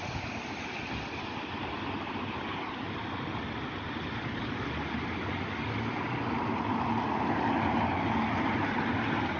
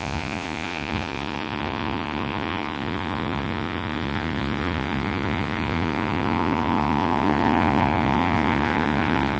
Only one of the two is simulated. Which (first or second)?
second